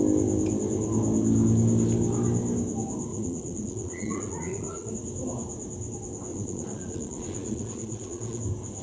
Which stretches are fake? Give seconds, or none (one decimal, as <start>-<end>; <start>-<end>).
3.1-4.9; 6.3-8.4